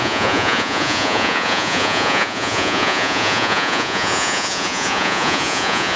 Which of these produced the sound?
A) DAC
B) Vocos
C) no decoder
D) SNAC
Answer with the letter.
B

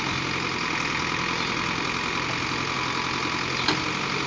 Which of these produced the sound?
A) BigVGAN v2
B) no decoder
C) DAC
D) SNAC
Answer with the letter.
B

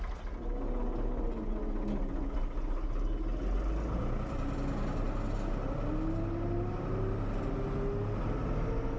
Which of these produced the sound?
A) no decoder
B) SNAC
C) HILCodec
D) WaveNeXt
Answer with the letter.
A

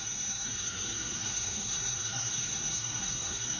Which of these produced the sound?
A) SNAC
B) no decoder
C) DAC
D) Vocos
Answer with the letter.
A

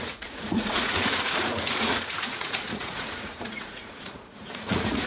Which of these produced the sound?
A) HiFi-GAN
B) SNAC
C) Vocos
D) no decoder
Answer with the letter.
C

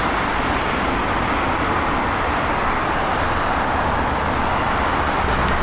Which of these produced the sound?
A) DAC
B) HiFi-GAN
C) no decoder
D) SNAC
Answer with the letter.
C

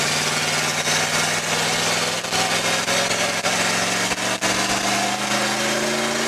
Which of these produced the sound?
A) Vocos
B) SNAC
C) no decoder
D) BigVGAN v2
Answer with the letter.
C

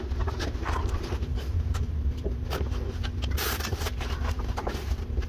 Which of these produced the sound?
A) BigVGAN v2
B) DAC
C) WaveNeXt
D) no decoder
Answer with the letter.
A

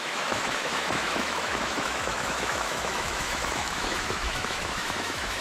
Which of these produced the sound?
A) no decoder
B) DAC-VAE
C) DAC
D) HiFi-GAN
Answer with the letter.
B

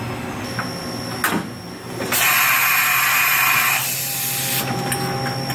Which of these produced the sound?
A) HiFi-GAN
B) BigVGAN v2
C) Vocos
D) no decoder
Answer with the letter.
D